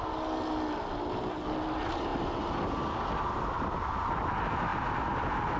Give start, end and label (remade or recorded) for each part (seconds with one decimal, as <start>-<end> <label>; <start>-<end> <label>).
0.0-5.6 recorded